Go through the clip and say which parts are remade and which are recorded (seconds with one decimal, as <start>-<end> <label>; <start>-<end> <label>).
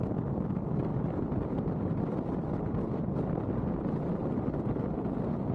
0.0-5.5 recorded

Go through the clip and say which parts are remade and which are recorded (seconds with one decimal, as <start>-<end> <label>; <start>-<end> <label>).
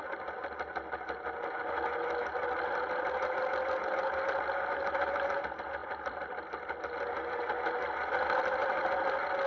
0.0-5.8 recorded; 5.8-6.8 remade; 6.8-9.5 recorded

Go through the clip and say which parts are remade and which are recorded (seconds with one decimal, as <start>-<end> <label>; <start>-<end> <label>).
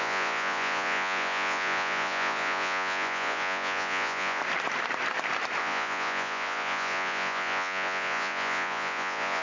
0.0-4.4 remade; 4.4-5.6 recorded; 5.6-9.4 remade